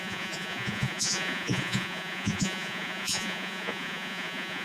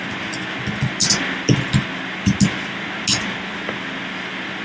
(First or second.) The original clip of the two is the second